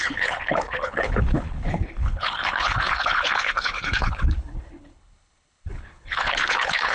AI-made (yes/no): yes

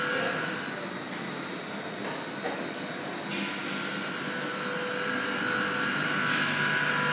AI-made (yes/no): no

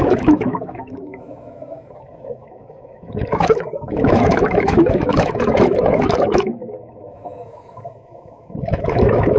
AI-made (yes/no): yes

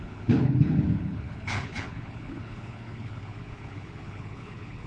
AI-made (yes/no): yes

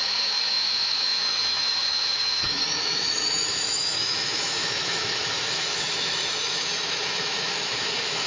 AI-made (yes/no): yes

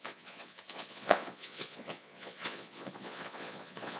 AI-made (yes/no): yes